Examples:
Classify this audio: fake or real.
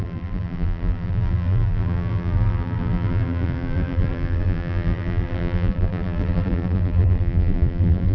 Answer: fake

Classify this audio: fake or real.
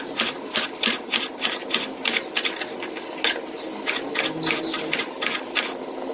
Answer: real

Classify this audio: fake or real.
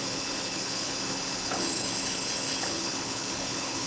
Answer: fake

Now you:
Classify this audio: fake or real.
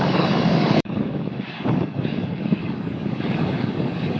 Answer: fake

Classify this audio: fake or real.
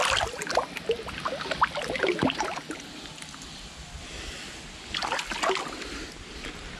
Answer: real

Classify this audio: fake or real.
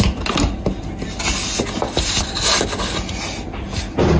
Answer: real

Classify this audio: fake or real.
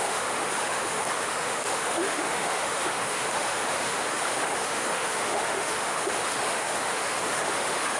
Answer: fake